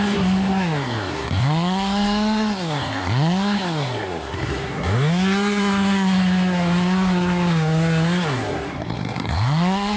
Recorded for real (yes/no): no